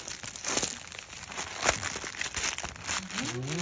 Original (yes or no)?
yes